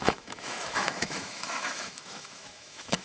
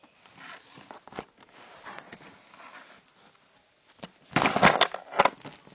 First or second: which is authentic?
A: second